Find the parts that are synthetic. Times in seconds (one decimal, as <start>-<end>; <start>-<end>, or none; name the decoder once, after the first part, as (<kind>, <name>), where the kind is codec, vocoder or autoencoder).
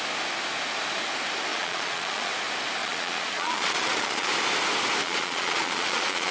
1.5-2.3 (vocoder, Vocos); 2.8-4.3; 5.0-6.3